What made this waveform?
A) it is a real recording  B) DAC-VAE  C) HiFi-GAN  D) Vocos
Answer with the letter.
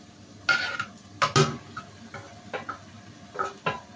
A